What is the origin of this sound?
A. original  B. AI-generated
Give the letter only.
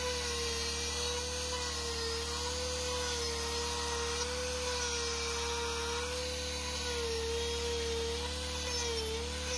A